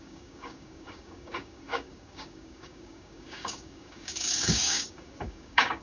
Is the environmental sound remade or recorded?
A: remade